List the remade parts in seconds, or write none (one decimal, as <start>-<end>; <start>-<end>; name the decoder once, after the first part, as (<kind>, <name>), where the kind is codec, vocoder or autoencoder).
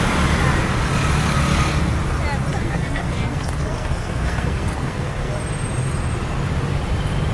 2.6-5.3 (codec, SNAC)